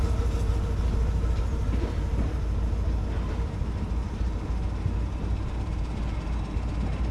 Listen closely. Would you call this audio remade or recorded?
recorded